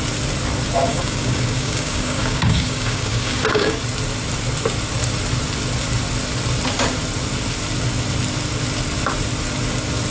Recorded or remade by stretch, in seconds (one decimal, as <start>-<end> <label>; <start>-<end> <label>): 0.0-0.9 recorded; 0.9-3.8 remade; 3.8-10.1 recorded